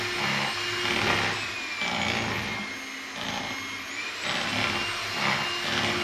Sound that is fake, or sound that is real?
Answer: real